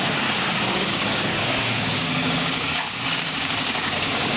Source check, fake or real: fake